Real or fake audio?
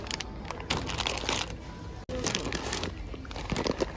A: real